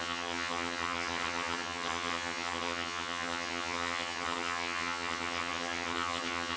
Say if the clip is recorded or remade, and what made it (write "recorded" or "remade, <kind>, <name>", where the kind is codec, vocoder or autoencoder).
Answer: remade, vocoder, HiFi-GAN